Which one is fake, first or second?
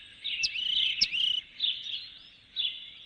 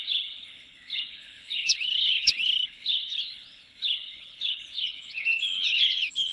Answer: second